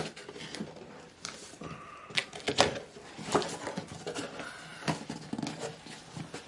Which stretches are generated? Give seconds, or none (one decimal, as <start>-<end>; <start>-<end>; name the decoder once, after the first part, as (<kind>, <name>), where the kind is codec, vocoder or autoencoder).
none

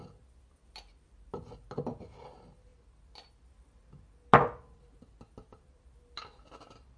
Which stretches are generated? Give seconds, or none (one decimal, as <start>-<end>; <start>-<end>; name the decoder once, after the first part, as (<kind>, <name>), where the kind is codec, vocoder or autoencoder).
none

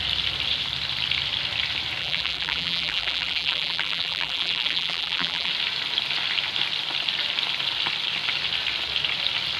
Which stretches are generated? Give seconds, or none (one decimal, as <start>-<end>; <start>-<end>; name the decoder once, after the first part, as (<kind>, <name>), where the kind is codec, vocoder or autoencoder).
2.0-5.5 (vocoder, BigVGAN v2)